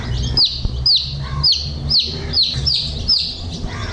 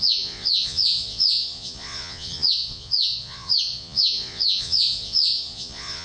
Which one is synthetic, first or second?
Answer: second